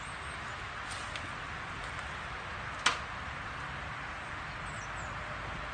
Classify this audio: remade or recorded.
recorded